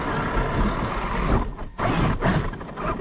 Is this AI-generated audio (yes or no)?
no